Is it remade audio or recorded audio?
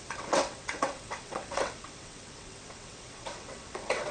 remade